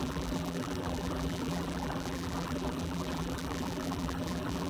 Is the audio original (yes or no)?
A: no